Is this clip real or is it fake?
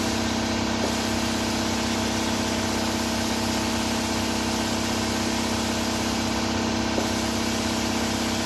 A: real